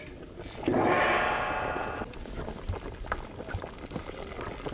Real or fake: real